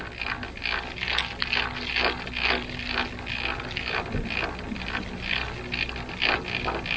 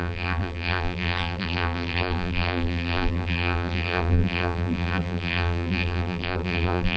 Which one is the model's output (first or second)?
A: second